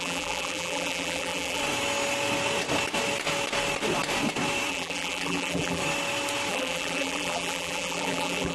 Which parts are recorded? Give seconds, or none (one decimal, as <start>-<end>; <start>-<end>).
1.6-4.7; 5.8-6.5